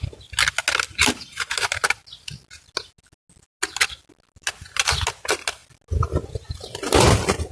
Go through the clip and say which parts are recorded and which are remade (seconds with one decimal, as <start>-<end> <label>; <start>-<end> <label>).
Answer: 0.0-7.5 recorded

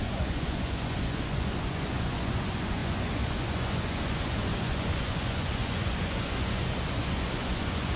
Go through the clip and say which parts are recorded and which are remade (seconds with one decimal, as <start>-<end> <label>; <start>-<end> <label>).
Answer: 0.0-8.0 remade